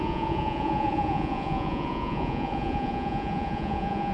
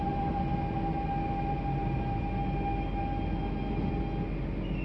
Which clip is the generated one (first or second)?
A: first